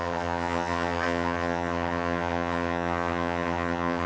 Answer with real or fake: fake